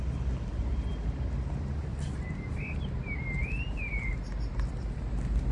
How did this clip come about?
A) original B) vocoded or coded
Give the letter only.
A